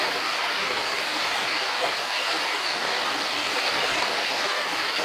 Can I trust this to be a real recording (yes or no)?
no